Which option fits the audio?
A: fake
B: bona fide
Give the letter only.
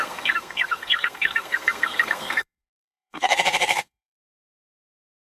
A